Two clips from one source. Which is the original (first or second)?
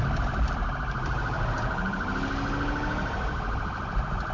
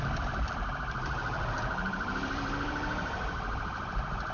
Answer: first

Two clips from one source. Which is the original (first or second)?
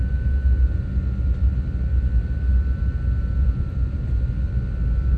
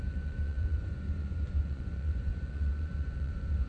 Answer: first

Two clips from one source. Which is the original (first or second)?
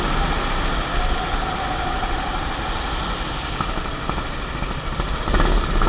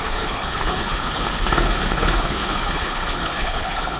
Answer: first